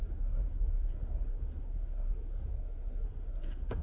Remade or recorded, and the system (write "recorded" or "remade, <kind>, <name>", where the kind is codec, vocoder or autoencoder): remade, codec, SNAC